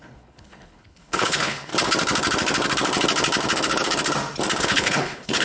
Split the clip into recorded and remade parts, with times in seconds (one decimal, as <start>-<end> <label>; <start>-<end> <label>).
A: 0.0-1.7 remade; 1.7-4.6 recorded; 4.6-5.4 remade